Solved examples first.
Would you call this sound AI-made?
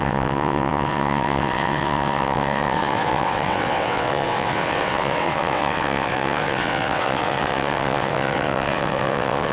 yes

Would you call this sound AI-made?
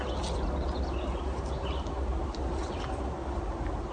no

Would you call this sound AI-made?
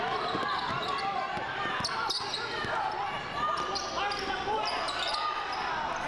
no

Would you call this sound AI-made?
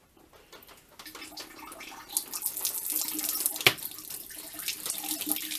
no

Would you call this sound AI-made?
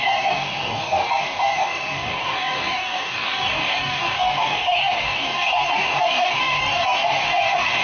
yes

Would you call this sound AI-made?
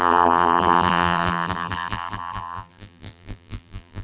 yes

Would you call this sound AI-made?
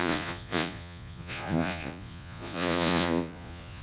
yes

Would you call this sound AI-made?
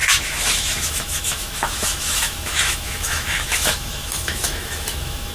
yes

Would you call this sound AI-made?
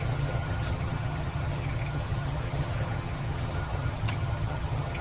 yes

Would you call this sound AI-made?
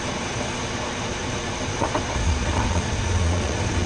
yes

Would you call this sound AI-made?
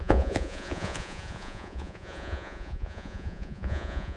yes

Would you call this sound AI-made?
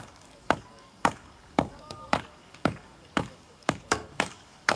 yes